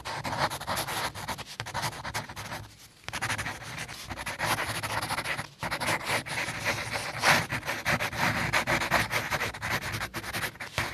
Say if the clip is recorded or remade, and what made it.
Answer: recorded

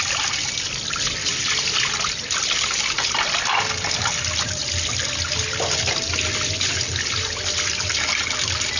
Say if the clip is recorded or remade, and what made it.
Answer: recorded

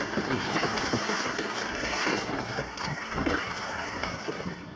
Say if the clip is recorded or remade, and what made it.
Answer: remade, codec, SNAC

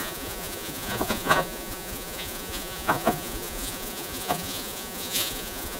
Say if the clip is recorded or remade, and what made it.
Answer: remade, vocoder, Vocos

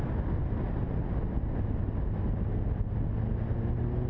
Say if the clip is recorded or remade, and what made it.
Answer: recorded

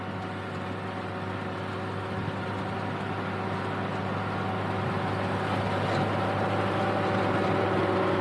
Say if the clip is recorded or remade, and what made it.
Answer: recorded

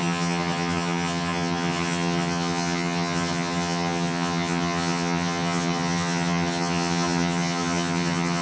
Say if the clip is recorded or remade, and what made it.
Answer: remade, vocoder, HiFi-GAN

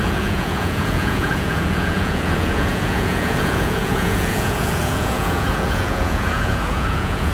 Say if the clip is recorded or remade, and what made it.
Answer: remade, vocoder, Vocos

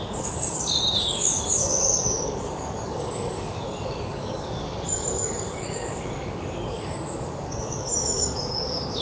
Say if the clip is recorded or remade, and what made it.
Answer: remade, codec, DAC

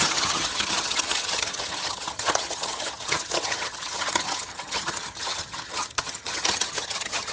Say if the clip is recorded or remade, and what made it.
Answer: remade, vocoder, HiFi-GAN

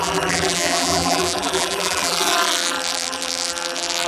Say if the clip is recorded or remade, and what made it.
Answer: remade, vocoder, BigVGAN v2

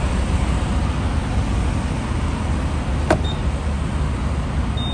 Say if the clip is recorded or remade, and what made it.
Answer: recorded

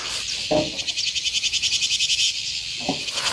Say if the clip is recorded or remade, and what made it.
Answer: recorded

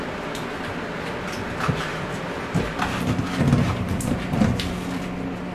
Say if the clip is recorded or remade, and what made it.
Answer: recorded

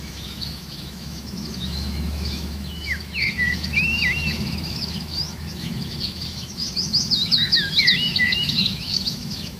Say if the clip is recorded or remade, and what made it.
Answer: remade, autoencoder, DAC-VAE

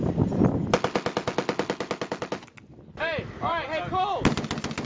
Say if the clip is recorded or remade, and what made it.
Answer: recorded